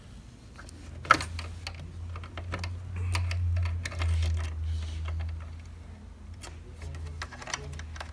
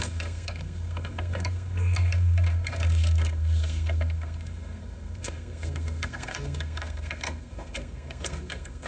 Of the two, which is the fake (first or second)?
second